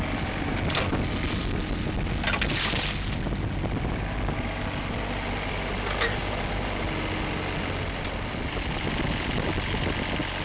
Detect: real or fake real